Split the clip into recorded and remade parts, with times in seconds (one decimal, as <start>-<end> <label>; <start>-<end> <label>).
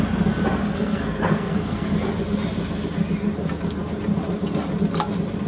0.0-0.6 recorded; 0.6-1.9 remade; 1.9-5.5 recorded